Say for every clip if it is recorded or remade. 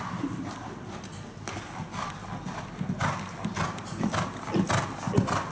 recorded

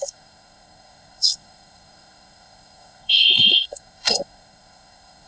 remade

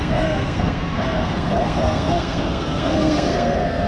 remade